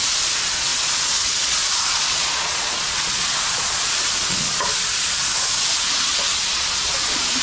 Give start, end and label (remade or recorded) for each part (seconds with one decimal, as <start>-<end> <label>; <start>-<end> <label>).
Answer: 0.0-5.3 remade; 5.3-5.8 recorded; 5.8-7.4 remade